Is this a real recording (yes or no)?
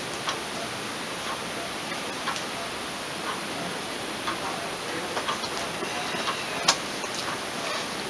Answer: yes